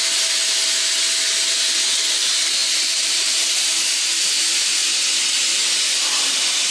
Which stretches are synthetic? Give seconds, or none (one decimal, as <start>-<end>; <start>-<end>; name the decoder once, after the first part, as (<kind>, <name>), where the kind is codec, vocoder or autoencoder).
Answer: 2.6-4.2 (vocoder, BigVGAN v2)